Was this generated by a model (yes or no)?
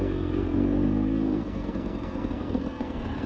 yes